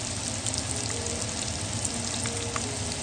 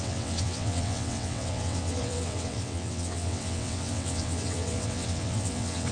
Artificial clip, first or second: second